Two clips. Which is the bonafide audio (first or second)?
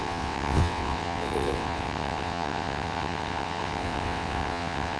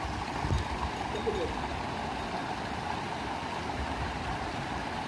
second